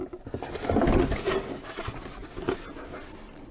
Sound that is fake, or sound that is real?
real